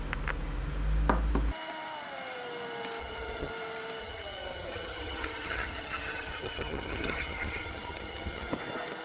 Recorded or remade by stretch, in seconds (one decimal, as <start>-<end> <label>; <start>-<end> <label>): 0.0-3.0 recorded; 3.0-3.5 remade; 3.5-4.0 recorded; 4.0-8.5 remade; 8.5-9.0 recorded